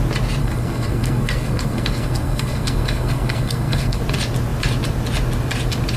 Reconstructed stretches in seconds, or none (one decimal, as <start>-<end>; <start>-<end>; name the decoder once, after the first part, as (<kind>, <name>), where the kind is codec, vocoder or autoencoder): 0.4-4.0 (codec, SNAC)

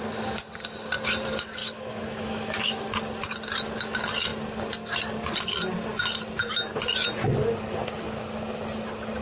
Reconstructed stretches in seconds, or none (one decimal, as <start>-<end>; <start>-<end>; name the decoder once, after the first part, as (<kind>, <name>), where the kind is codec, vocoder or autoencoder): 1.6-2.8 (autoencoder, DAC-VAE)

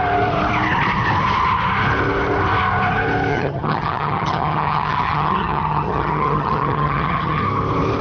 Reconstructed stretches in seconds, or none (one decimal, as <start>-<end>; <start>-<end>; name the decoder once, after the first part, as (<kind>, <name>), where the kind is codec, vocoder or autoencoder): 3.3-7.4 (vocoder, HiFi-GAN)